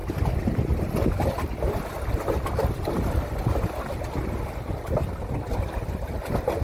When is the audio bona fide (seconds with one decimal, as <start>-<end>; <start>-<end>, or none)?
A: 0.0-6.6